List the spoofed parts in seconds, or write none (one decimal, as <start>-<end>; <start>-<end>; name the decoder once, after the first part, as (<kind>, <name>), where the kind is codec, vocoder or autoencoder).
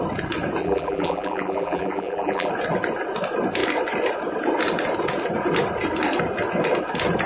0.6-2.5 (vocoder, BigVGAN v2)